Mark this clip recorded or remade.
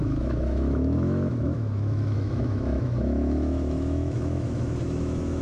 remade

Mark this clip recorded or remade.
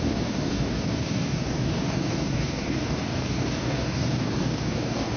remade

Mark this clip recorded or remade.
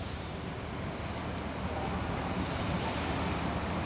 remade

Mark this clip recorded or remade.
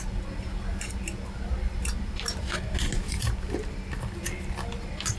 recorded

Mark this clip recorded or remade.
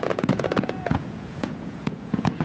remade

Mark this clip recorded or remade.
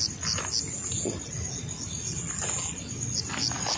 recorded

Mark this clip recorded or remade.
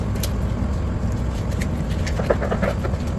recorded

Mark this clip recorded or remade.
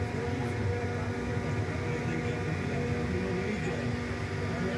recorded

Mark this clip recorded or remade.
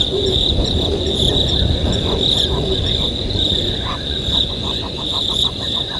remade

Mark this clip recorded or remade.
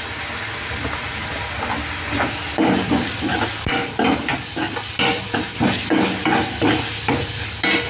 recorded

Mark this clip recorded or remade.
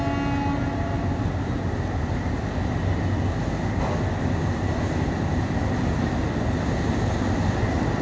recorded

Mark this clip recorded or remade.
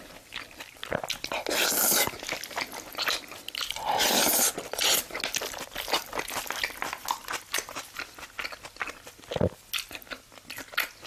recorded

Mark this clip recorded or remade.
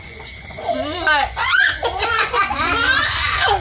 remade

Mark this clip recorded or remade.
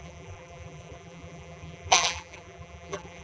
remade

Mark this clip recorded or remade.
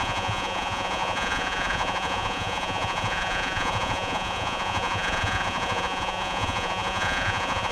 remade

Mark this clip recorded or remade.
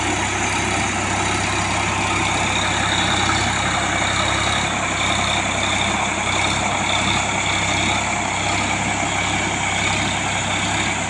recorded